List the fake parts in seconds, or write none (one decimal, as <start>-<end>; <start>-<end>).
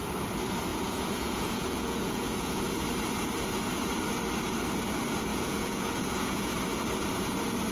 0.7-2.6; 5.3-6.5